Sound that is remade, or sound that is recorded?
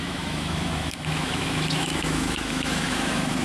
remade